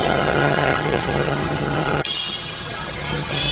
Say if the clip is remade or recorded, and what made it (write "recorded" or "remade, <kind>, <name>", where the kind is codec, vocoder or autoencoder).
remade, vocoder, HiFi-GAN